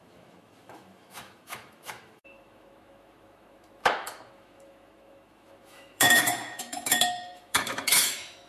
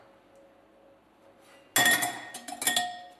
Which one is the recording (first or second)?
second